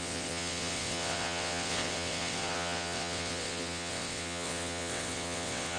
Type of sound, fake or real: fake